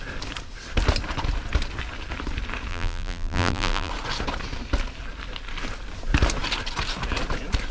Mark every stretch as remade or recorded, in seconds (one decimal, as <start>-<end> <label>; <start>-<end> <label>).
0.0-2.7 recorded; 2.7-3.9 remade; 3.9-7.7 recorded